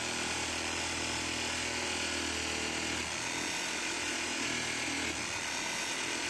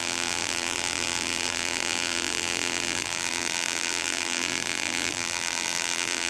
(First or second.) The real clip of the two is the first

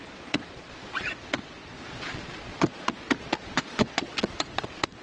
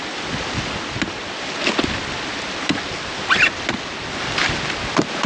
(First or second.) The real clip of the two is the second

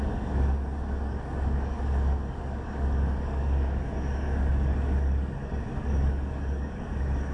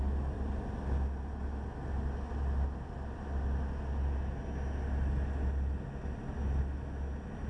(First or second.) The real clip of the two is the second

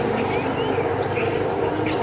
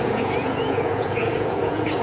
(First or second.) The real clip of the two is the first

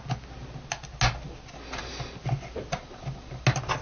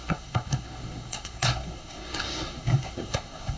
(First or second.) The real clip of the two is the first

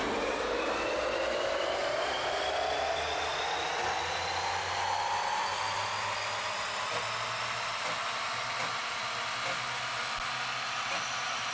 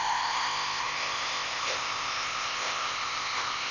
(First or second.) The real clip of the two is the first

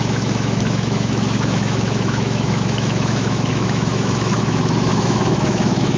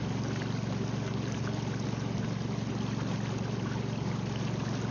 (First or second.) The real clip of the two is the second